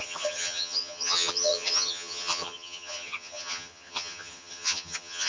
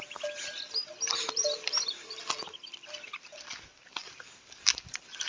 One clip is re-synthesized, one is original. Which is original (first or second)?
second